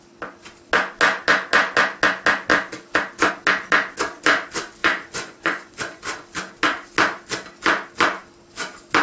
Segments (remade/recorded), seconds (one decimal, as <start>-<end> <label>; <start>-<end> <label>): 0.0-4.8 recorded; 4.8-6.0 remade; 6.0-9.0 recorded